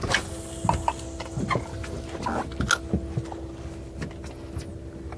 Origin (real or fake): real